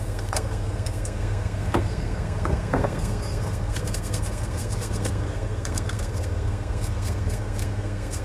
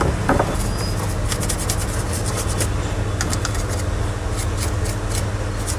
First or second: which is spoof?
first